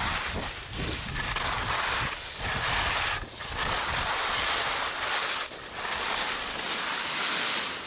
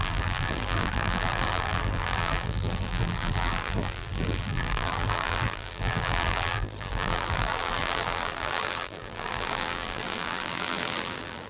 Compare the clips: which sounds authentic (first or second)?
first